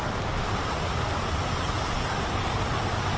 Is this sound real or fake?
real